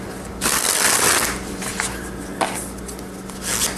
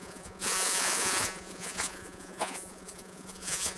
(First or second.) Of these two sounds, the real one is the first